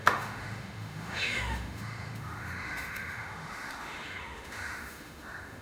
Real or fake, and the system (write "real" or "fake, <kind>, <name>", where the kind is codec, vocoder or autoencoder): fake, autoencoder, DAC-VAE